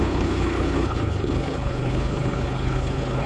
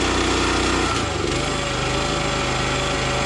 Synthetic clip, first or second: first